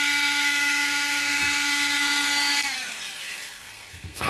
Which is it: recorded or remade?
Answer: remade